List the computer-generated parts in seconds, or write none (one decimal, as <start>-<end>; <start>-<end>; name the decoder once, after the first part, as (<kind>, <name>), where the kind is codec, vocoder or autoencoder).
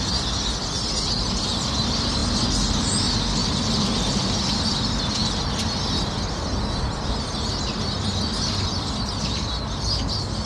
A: 3.4-4.1 (vocoder, BigVGAN v2)